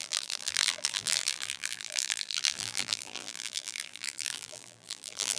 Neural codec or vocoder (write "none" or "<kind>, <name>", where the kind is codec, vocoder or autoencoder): vocoder, BigVGAN v2